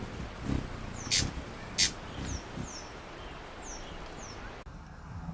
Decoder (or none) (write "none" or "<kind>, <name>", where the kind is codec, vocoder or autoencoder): none